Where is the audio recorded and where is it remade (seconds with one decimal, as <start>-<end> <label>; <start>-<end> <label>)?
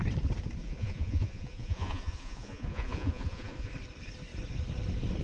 0.0-0.6 recorded; 0.6-3.7 remade; 3.7-5.2 recorded